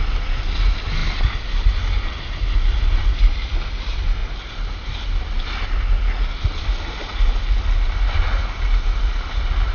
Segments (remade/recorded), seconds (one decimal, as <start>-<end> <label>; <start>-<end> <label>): 0.0-9.7 recorded